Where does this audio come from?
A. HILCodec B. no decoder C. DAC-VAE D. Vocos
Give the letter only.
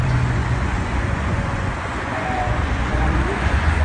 D